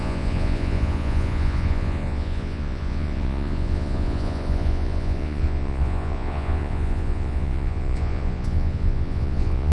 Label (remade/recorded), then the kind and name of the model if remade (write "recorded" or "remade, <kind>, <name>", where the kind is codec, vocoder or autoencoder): remade, vocoder, Vocos